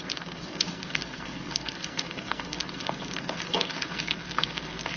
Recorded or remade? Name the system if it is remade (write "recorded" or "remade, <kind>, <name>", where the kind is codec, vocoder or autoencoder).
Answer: remade, codec, SNAC